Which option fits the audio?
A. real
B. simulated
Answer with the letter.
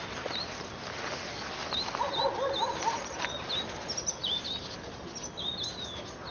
A